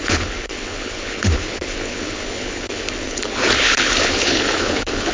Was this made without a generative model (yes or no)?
no